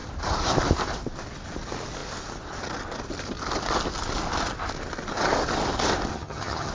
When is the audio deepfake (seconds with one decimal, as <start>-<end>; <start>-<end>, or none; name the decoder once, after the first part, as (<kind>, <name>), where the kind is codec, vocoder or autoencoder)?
6.1-6.7 (vocoder, HiFi-GAN)